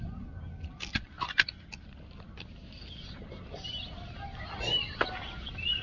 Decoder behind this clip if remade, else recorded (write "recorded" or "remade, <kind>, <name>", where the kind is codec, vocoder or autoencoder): recorded